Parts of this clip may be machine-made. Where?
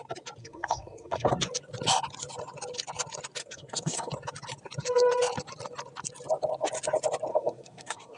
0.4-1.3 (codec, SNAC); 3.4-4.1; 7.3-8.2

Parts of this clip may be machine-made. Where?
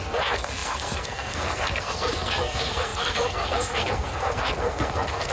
0.0-5.3 (codec, SNAC)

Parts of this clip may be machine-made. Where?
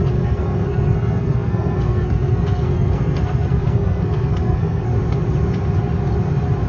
0.0-4.9 (codec, SNAC)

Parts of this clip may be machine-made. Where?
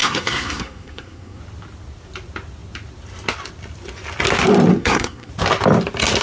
0.0-1.4 (codec, SNAC); 4.7-5.3